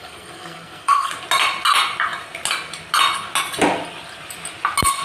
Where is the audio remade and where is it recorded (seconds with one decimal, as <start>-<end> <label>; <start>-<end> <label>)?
0.0-1.1 remade; 1.1-5.0 recorded